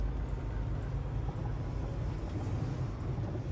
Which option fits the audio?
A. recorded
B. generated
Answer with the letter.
A